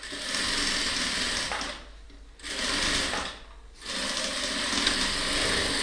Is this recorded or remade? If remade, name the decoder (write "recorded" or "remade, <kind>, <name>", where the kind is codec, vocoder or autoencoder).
recorded